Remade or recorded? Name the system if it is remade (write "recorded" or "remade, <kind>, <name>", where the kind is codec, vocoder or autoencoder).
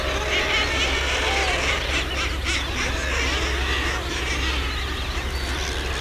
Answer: recorded